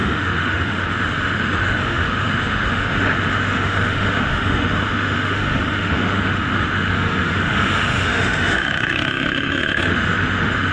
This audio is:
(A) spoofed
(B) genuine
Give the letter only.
A